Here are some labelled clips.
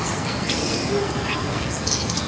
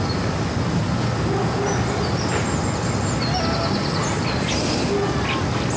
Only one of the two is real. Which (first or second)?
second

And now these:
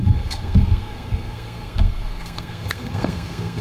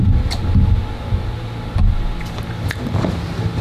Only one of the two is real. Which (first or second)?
second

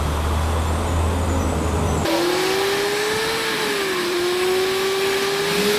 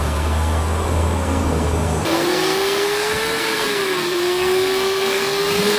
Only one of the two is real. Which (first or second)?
first